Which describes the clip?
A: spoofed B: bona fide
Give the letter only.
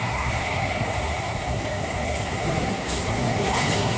A